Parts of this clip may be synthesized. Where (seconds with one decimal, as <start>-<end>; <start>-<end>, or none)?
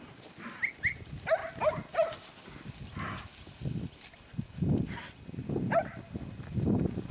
none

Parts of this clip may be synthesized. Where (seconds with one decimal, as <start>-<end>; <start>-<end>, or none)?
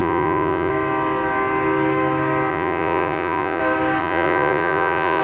0.0-0.7; 2.5-3.6; 4.0-5.2